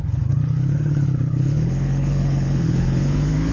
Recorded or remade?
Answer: remade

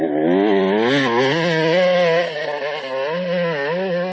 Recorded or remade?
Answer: recorded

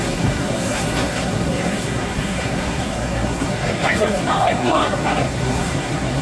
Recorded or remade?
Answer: remade